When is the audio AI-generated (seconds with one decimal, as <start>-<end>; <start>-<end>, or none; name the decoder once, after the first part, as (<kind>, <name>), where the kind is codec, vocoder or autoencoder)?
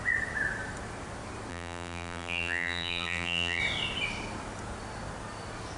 1.5-3.6 (vocoder, BigVGAN v2)